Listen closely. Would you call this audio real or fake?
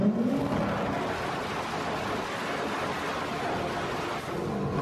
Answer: real